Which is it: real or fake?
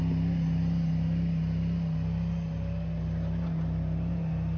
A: real